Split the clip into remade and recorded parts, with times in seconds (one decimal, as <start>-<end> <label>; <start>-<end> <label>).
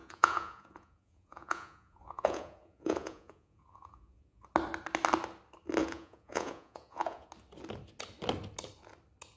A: 0.0-4.4 remade; 4.4-5.8 recorded; 5.8-7.3 remade; 7.3-9.4 recorded